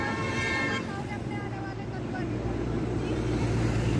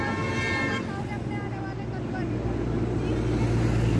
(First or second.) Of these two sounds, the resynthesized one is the first